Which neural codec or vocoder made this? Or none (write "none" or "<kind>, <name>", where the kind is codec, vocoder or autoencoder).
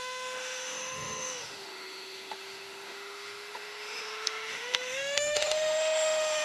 autoencoder, DAC-VAE